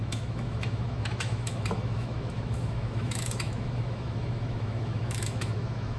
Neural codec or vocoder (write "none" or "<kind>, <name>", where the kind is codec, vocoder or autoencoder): autoencoder, DAC-VAE